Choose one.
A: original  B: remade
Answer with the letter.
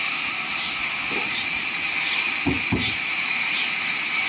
B